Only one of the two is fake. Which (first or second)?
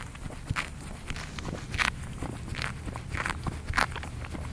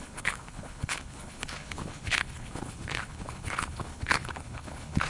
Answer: second